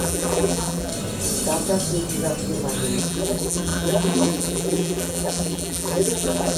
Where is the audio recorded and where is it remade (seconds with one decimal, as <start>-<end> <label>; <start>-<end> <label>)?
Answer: 0.0-0.9 remade; 0.9-3.0 recorded; 3.0-6.6 remade